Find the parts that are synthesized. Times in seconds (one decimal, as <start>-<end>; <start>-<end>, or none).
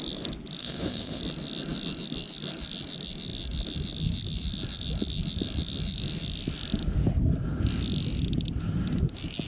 0.6-1.2